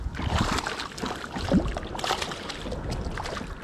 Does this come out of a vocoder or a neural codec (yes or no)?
no